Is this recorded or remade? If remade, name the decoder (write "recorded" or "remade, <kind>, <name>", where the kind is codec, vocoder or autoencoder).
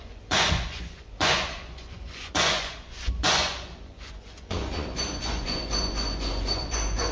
remade, vocoder, Vocos